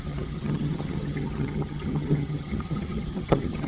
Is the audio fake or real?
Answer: fake